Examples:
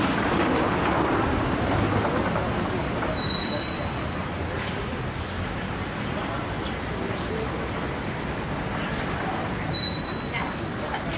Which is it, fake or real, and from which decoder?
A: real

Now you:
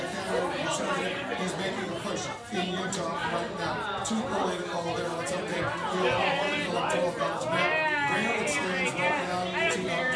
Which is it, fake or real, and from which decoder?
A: real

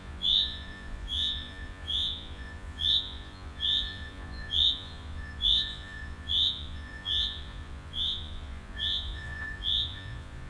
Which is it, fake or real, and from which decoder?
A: fake, vocoder, Vocos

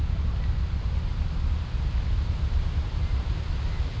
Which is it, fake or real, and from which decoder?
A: fake, vocoder, BigVGAN v2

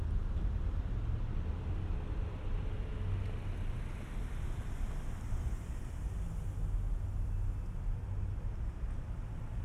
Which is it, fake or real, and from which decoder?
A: real